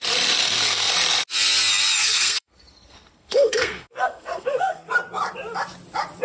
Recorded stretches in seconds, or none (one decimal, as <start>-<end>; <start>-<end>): 0.0-0.4; 0.9-2.0; 4.9-6.2